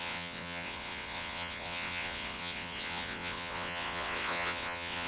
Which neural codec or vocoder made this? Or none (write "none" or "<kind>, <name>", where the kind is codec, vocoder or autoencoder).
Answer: vocoder, WaveNeXt